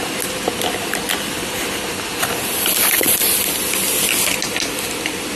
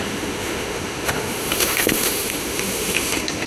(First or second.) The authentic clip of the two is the first